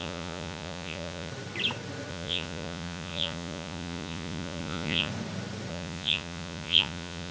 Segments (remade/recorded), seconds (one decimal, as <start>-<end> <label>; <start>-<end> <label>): 0.0-1.3 remade; 1.3-2.1 recorded; 2.1-5.1 remade; 5.1-5.7 recorded; 5.7-7.3 remade